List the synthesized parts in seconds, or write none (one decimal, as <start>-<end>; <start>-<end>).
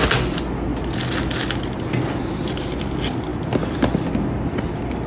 none